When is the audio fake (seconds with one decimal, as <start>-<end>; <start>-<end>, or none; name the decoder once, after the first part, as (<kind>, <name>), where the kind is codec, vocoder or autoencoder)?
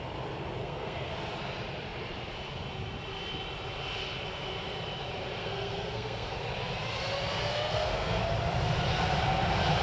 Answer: 0.6-1.1 (codec, SNAC); 5.4-6.4; 7.5-8.2